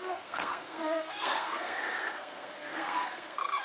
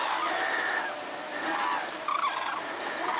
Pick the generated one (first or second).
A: first